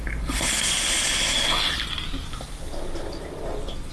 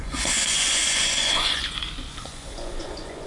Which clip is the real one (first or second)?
first